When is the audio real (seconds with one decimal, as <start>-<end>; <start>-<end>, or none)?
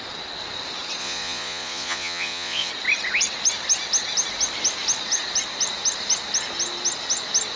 0.0-1.0; 2.7-7.6